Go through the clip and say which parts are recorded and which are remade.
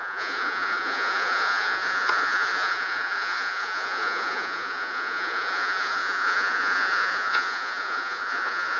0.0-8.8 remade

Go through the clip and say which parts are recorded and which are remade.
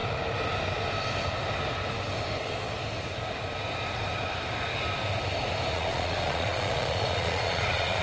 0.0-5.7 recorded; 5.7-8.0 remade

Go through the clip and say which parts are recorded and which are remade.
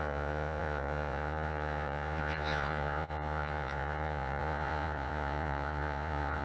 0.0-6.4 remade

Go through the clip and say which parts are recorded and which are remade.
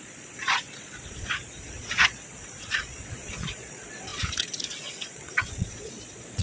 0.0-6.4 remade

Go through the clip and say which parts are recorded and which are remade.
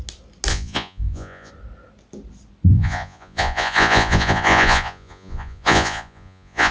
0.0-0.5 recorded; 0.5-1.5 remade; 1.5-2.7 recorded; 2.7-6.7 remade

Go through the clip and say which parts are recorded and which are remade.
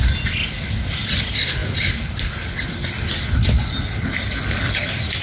0.0-5.2 recorded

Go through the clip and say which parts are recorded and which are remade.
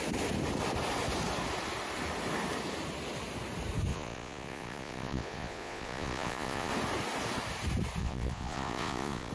0.0-3.9 recorded; 3.9-6.7 remade; 6.7-8.0 recorded; 8.0-9.3 remade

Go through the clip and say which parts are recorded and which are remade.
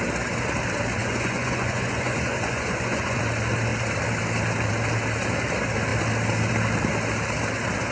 0.0-1.0 recorded; 1.0-3.2 remade; 3.2-7.9 recorded